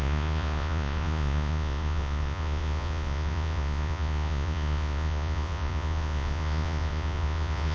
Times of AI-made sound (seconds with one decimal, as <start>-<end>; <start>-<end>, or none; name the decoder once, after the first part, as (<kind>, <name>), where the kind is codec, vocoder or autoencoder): 0.0-7.7 (vocoder, Vocos)